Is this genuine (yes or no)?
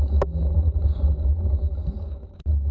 yes